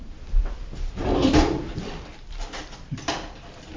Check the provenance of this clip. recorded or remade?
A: recorded